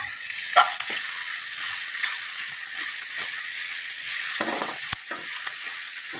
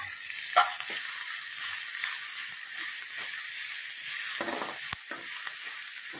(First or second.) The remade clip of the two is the first